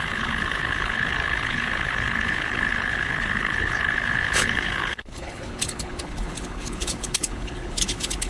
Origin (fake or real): fake